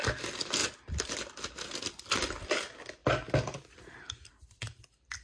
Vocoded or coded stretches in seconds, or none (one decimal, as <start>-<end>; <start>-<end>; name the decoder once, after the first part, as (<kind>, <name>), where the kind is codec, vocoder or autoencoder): none